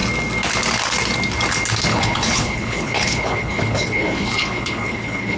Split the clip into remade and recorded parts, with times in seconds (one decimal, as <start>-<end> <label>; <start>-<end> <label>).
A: 0.0-1.9 recorded; 1.9-5.4 remade